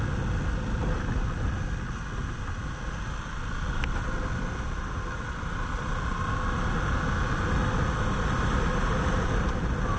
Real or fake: real